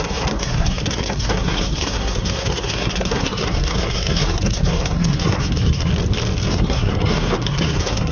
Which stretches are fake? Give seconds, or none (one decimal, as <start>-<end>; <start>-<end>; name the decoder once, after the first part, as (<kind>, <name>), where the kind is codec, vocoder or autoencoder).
0.0-5.9 (codec, SNAC); 6.5-8.1